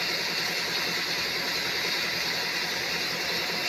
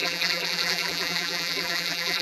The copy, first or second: second